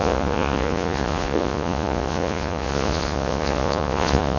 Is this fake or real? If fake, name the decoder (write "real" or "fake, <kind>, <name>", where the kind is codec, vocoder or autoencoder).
fake, vocoder, Vocos